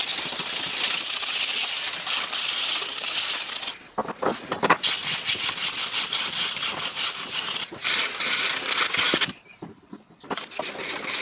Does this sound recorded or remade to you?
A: recorded